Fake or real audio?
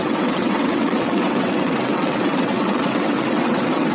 fake